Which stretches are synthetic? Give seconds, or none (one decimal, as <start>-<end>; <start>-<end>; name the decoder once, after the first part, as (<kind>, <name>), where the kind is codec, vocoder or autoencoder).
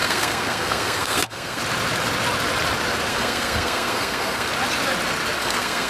0.0-1.6 (codec, SNAC); 3.1-4.5; 5.4-5.9